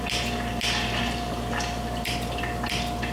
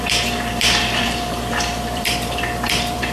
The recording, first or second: first